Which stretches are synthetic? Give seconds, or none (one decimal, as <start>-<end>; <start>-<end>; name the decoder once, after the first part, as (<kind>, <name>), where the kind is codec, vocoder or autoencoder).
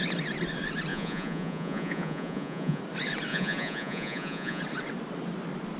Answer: 0.9-2.8 (vocoder, Vocos); 3.3-4.6